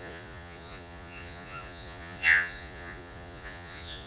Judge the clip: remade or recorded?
remade